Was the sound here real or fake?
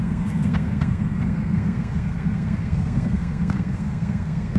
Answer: fake